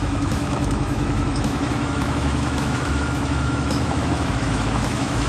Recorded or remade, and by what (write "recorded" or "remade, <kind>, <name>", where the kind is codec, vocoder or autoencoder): remade, autoencoder, DAC-VAE